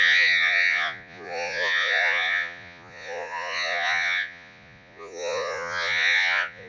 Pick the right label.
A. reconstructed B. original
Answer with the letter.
A